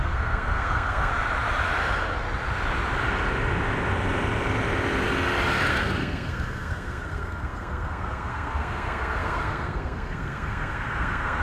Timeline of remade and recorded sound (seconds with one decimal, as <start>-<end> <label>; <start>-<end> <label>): 0.0-1.1 remade; 1.1-5.7 recorded; 5.7-11.4 remade